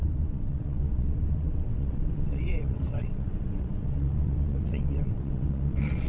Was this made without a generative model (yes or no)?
no